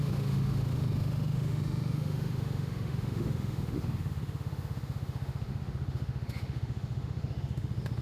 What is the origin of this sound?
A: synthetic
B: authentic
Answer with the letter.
A